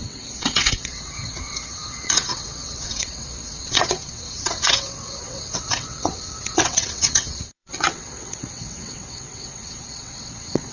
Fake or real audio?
fake